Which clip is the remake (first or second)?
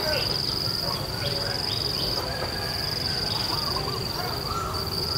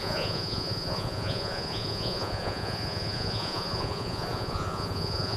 second